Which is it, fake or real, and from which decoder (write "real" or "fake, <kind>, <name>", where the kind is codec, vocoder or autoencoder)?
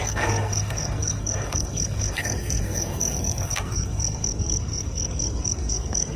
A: fake, codec, SNAC